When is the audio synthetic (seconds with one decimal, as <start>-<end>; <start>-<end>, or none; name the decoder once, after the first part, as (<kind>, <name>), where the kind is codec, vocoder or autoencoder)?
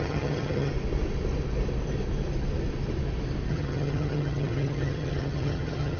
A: 0.0-0.7 (vocoder, HiFi-GAN); 3.5-6.0